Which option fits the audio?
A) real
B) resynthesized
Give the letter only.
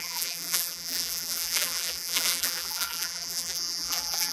B